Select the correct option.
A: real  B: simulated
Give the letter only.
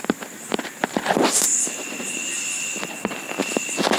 B